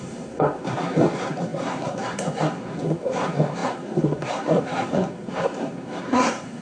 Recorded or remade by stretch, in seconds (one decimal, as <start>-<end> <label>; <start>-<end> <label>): 0.0-6.6 remade